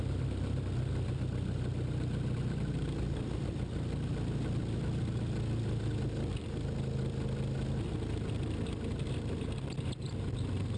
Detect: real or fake real